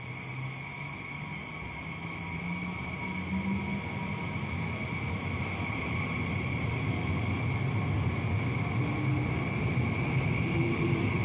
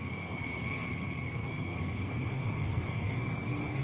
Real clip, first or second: first